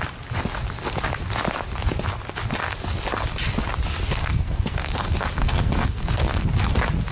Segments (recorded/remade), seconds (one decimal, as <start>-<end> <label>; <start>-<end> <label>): 0.0-4.2 recorded; 4.2-4.9 remade; 4.9-5.4 recorded; 5.4-6.5 remade; 6.5-7.1 recorded